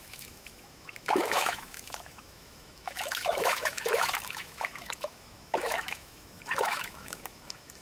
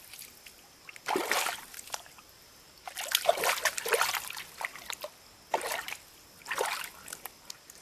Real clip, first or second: second